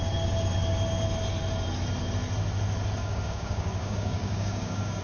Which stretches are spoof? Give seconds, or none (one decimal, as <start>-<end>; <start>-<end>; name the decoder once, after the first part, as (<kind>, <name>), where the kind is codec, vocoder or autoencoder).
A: 3.0-5.0 (codec, DAC)